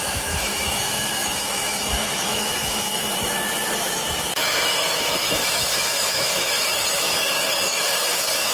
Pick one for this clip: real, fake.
fake